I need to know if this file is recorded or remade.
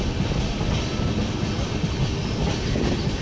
recorded